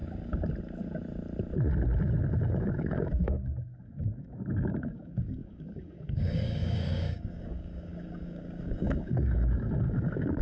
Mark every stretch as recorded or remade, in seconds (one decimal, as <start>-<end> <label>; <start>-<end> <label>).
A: 0.0-2.4 recorded; 2.4-10.4 remade